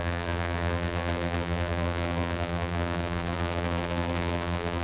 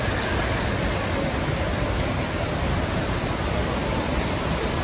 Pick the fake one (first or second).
first